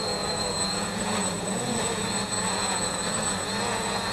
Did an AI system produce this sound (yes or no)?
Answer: yes